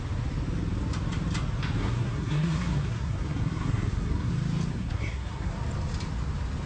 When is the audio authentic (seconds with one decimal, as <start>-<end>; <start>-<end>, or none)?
0.0-1.8; 4.3-4.7; 5.5-6.7